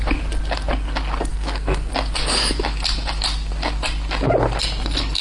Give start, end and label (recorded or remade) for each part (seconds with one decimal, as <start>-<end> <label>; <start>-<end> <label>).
0.0-1.3 recorded; 1.3-1.9 remade; 1.9-5.2 recorded